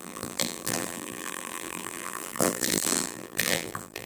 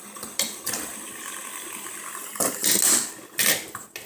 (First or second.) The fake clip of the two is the first